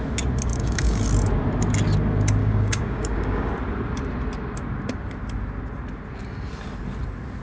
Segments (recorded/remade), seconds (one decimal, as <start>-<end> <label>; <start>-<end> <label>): 0.0-0.5 recorded; 0.5-1.0 remade; 1.0-2.4 recorded; 2.4-3.5 remade; 3.5-7.4 recorded